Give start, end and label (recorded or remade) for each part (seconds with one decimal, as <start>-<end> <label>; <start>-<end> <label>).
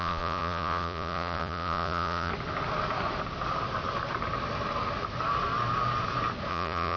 0.0-2.3 remade; 2.3-6.5 recorded; 6.5-7.0 remade